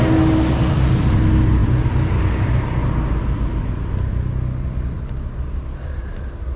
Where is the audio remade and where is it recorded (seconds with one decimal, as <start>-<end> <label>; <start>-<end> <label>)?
0.0-6.6 recorded